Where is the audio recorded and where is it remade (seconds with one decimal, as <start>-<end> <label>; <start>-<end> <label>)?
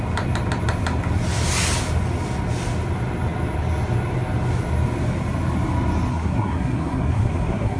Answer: 0.0-6.1 recorded; 6.1-7.8 remade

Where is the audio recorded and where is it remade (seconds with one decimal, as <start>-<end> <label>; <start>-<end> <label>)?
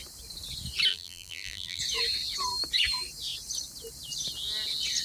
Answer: 0.0-0.9 recorded; 0.9-1.8 remade; 1.8-5.0 recorded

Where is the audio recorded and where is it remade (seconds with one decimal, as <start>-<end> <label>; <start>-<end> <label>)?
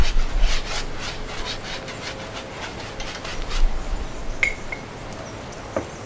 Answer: 0.0-6.1 recorded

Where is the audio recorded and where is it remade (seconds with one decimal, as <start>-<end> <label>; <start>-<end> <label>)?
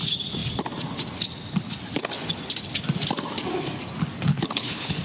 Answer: 0.0-4.3 recorded; 4.3-5.0 remade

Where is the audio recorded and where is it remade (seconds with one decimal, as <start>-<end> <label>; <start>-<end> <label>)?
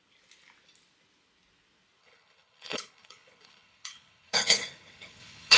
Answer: 0.0-2.0 recorded; 2.0-5.6 remade